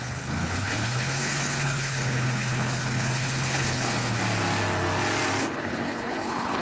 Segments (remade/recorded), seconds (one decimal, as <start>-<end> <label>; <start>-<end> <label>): 0.0-4.2 remade; 4.2-5.4 recorded; 5.4-6.6 remade